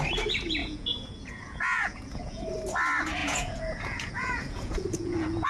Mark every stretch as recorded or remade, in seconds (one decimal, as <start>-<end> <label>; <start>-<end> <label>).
0.0-0.6 recorded; 0.6-2.4 remade; 2.4-3.2 recorded; 3.2-5.5 remade